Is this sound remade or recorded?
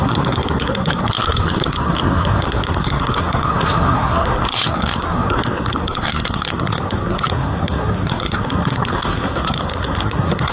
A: remade